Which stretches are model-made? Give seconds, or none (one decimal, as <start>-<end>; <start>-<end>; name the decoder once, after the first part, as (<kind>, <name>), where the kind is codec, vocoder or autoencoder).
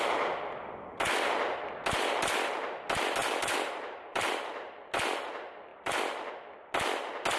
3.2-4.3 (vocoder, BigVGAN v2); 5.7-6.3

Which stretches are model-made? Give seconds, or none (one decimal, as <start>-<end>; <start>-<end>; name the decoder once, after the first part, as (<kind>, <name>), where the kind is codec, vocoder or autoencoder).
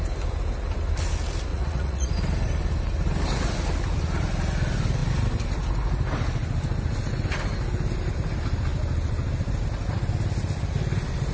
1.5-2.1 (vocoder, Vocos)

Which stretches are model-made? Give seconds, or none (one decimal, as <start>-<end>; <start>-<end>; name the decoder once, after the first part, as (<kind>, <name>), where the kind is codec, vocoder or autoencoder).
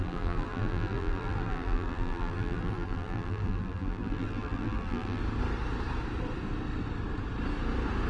0.0-5.2 (vocoder, BigVGAN v2)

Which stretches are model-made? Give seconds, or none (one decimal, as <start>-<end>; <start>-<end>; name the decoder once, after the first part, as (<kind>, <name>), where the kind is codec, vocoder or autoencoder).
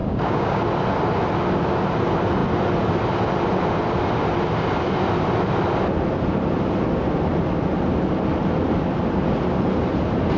0.0-0.6 (codec, DAC)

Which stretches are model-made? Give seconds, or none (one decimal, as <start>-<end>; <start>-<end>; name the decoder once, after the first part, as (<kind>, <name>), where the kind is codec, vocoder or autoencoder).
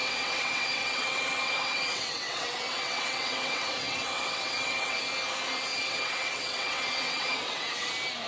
0.0-5.0 (vocoder, WaveNeXt); 5.7-7.9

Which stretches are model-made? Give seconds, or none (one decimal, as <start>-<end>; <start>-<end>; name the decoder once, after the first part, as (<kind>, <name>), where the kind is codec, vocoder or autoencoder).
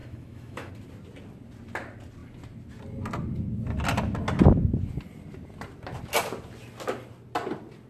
0.0-0.7 (autoencoder, DAC-VAE)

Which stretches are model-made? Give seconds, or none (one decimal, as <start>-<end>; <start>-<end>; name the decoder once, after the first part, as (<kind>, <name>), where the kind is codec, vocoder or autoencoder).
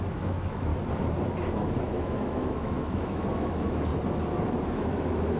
0.0-0.7 (autoencoder, DAC-VAE); 1.8-3.9; 4.7-5.4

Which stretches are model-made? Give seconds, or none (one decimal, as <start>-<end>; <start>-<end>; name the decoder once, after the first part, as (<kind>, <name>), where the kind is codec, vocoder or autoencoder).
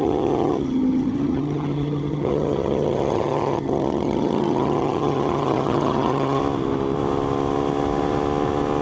0.0-6.4 (vocoder, HiFi-GAN)